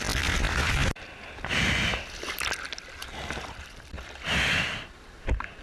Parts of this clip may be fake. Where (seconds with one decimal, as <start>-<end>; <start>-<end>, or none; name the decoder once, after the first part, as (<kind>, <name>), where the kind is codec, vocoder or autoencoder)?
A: none